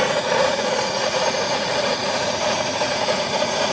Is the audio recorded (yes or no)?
no